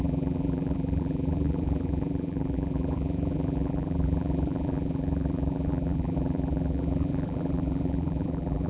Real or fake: fake